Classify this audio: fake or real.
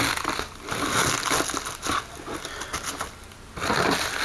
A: real